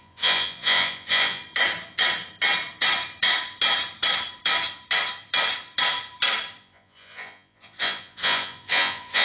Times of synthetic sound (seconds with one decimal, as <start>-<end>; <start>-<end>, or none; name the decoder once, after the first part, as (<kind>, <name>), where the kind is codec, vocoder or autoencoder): 0.0-1.4 (vocoder, Vocos); 6.6-9.2